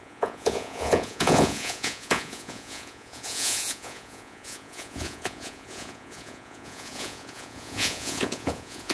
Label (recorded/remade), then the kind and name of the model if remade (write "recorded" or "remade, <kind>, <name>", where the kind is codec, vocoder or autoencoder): remade, vocoder, Vocos